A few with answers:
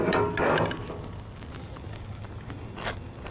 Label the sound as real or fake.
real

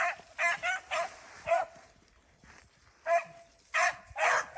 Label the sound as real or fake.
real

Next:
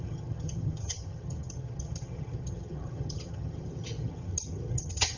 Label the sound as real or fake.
fake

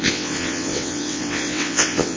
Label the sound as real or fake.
fake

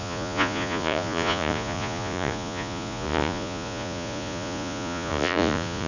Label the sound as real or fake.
fake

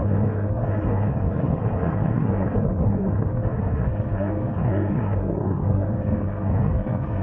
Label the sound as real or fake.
fake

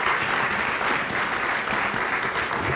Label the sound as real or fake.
real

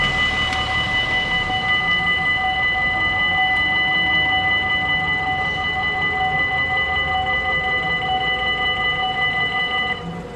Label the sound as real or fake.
real